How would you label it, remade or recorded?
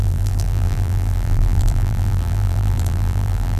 remade